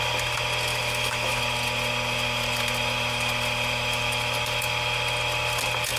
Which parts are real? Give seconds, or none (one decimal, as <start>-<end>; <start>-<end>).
0.0-0.7; 1.4-6.0